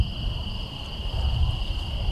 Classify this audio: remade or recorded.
recorded